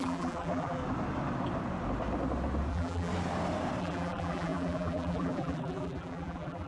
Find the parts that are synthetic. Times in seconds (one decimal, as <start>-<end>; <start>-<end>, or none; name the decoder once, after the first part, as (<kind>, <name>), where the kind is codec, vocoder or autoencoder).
0.0-0.8 (vocoder, BigVGAN v2); 2.7-3.1; 3.8-6.7